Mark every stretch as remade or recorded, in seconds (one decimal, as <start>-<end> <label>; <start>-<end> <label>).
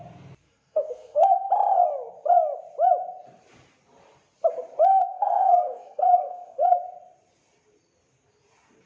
0.0-0.4 recorded; 0.4-1.5 remade; 1.5-4.9 recorded; 4.9-6.8 remade; 6.8-8.9 recorded